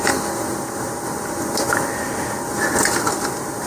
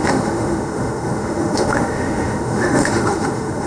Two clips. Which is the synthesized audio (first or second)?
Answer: second